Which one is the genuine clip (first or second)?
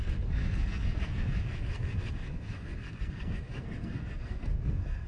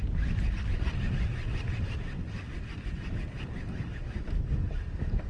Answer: second